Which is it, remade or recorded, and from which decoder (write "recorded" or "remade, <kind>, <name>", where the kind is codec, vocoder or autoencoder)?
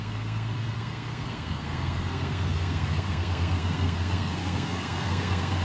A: remade, codec, SNAC